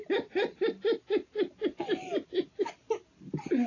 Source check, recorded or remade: recorded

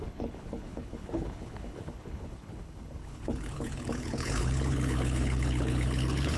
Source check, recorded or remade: remade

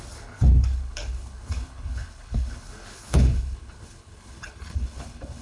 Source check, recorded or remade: remade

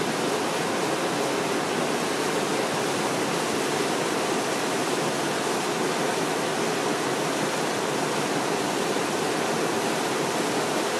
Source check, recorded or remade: recorded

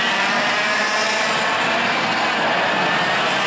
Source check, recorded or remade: recorded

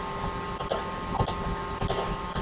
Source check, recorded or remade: recorded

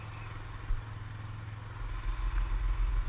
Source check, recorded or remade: recorded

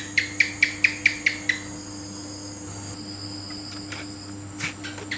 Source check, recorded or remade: recorded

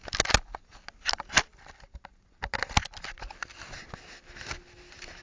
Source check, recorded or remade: recorded